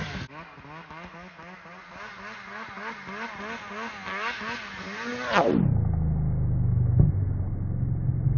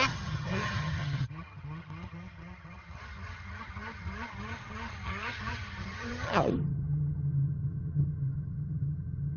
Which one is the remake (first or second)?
second